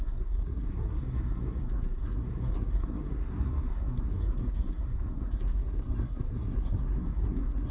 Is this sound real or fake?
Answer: fake